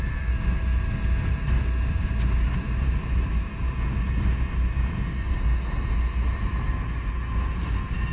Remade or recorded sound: recorded